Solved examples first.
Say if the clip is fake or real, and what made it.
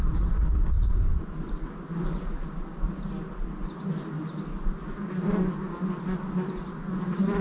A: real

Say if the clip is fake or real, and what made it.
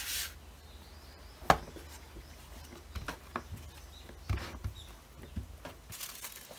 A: real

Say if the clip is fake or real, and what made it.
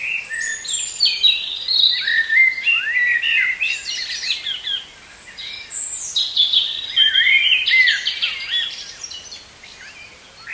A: real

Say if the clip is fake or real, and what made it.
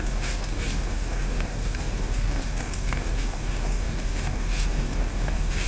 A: fake, codec, DAC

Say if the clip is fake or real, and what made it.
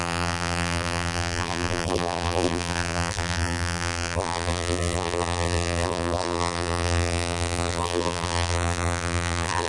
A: fake, vocoder, BigVGAN v2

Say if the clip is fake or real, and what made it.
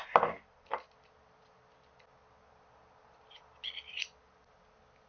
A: real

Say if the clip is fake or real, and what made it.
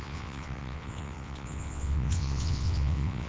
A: fake, vocoder, WaveNeXt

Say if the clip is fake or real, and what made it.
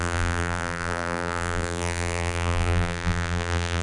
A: fake, vocoder, BigVGAN v2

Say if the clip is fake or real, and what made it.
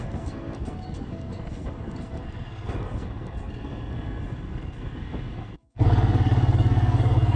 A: fake, codec, SNAC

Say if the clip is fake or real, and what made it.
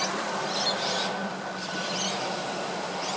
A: real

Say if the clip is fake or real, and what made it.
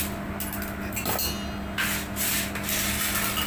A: real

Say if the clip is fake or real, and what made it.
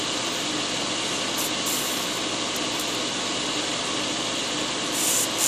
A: real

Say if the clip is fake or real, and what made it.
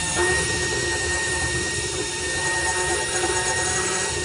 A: fake, vocoder, BigVGAN v2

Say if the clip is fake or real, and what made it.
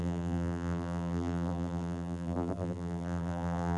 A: fake, vocoder, BigVGAN v2